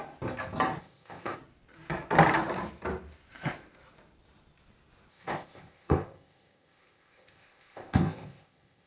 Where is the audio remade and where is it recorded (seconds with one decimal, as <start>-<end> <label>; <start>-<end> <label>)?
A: 0.0-0.8 recorded; 0.8-1.4 remade; 1.4-5.1 recorded; 5.1-8.9 remade